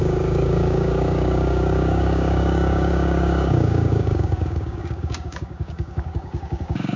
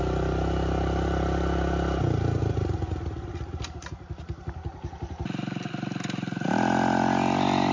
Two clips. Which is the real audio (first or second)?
second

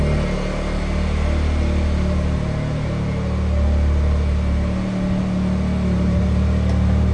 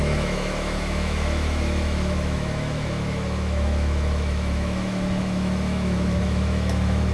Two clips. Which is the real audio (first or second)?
first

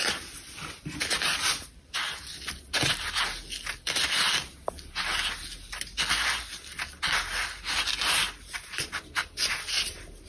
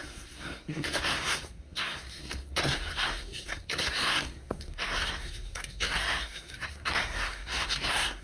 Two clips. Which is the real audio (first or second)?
first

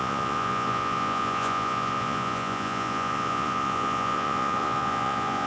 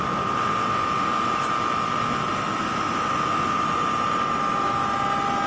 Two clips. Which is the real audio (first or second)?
second